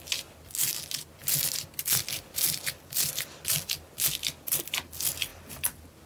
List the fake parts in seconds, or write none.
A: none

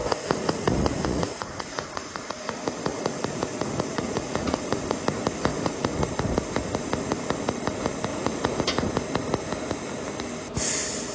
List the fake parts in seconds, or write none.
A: 0.0-2.3; 2.9-5.0; 5.5-6.1; 8.1-8.6

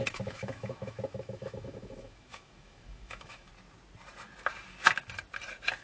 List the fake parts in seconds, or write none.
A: 0.0-3.5

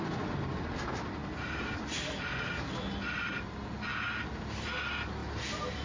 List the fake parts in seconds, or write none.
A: none